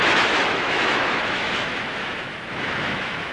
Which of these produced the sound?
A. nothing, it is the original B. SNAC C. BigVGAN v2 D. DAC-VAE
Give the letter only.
D